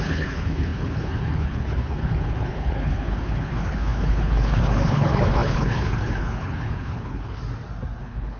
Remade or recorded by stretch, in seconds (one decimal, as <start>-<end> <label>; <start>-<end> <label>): 0.0-7.4 remade; 7.4-8.0 recorded; 8.0-8.4 remade